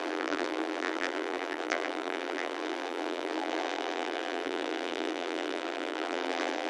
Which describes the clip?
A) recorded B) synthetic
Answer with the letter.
B